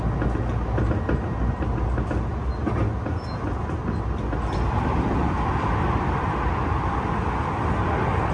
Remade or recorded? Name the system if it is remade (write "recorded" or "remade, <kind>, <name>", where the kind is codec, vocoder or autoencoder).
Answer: recorded